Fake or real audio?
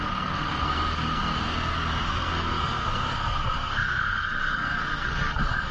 fake